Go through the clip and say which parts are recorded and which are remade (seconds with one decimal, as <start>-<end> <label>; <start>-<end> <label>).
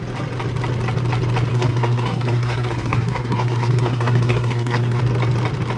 0.0-1.5 recorded; 1.5-5.0 remade; 5.0-5.8 recorded